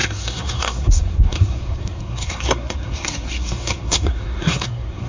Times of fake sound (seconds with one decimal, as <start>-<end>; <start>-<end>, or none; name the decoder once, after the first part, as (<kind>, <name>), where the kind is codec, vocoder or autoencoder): 0.0-5.1 (codec, SNAC)